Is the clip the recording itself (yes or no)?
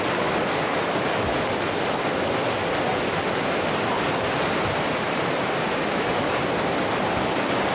yes